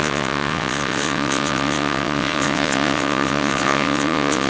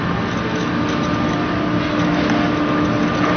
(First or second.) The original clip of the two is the second